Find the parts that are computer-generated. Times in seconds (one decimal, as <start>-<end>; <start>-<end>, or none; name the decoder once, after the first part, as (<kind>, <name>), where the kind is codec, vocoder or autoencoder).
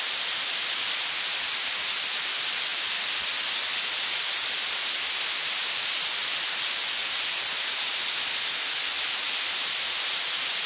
none